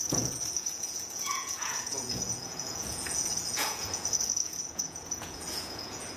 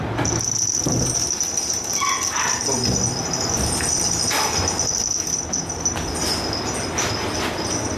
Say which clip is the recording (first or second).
second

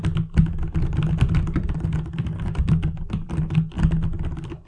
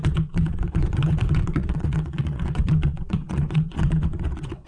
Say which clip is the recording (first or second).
first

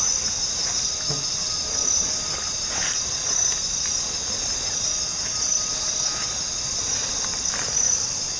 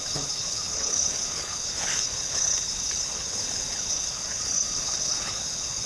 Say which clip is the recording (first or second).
first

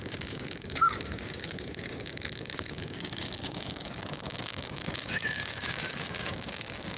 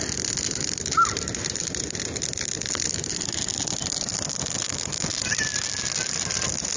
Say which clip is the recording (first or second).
second